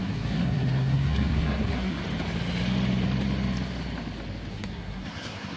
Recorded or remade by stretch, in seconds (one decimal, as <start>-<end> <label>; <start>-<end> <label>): 0.0-2.0 remade; 2.0-4.5 recorded; 4.5-5.6 remade